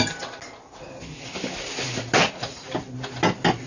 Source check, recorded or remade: recorded